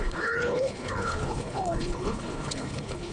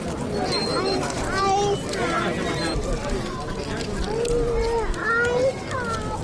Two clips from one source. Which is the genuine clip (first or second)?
second